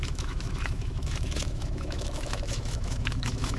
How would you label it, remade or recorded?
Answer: remade